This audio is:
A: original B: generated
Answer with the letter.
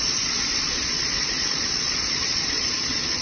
B